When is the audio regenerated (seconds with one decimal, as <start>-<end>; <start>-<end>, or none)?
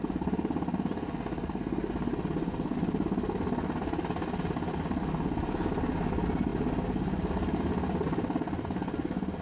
none